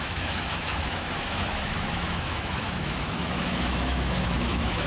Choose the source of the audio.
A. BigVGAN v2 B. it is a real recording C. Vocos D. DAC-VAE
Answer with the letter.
D